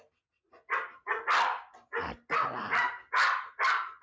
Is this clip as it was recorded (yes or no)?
yes